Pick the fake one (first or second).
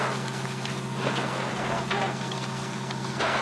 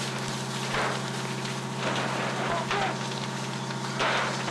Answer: first